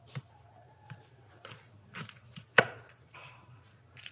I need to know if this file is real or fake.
fake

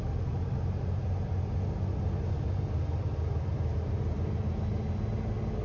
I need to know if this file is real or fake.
real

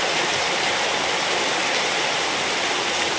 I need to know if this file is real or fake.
real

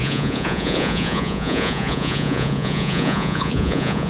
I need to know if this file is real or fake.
fake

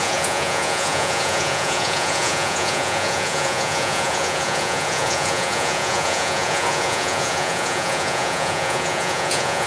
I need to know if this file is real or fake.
fake